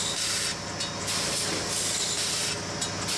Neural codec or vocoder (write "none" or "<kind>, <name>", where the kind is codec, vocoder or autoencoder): none